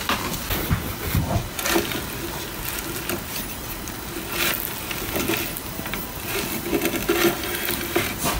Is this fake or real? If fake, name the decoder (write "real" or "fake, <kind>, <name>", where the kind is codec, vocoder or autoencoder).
real